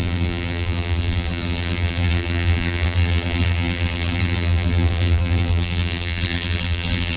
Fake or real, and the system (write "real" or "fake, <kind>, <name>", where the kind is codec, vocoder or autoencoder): fake, vocoder, BigVGAN v2